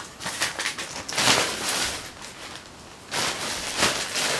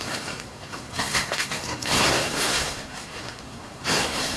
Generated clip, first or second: second